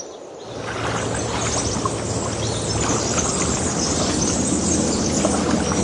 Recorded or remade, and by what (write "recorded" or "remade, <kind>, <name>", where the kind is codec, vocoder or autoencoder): recorded